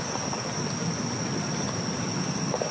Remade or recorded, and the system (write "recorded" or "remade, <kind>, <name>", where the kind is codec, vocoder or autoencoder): recorded